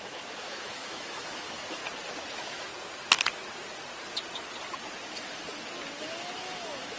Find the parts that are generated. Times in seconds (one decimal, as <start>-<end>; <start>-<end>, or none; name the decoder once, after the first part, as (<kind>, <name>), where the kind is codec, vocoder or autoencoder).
0.0-1.8 (autoencoder, DAC-VAE); 2.3-2.7; 6.0-7.0